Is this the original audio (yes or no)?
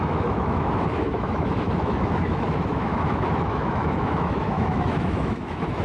no